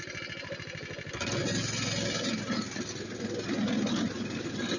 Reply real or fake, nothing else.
real